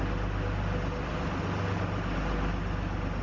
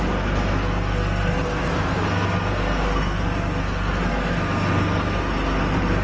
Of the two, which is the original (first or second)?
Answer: first